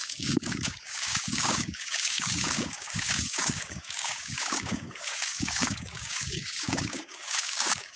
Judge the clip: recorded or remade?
remade